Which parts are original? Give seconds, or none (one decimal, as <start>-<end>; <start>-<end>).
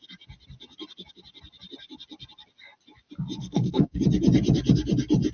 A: 0.0-3.4; 4.0-5.3